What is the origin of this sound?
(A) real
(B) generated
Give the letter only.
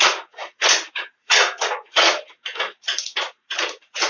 B